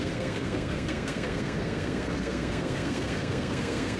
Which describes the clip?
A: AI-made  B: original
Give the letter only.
A